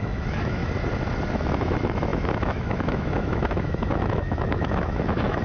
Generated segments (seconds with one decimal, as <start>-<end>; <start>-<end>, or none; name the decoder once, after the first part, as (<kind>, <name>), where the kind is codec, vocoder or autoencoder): 0.0-0.6 (autoencoder, DAC-VAE); 1.3-5.4